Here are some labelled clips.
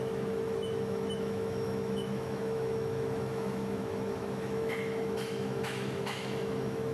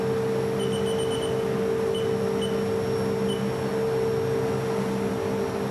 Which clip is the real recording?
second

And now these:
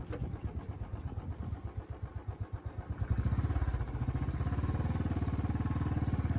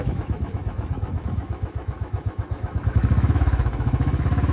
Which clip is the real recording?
first